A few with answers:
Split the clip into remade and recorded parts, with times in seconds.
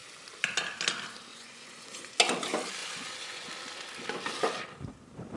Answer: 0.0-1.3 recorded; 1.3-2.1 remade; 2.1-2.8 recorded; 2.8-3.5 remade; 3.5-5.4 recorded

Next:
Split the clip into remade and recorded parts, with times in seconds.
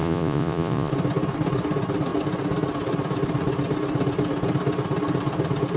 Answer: 0.0-0.9 remade; 0.9-5.8 recorded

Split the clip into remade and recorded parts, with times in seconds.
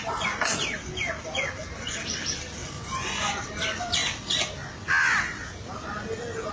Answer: 0.0-2.6 recorded; 2.6-3.3 remade; 3.3-6.5 recorded